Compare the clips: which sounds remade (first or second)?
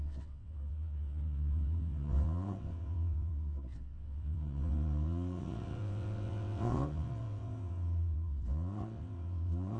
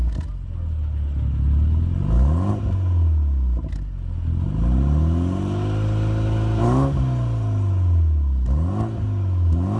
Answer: first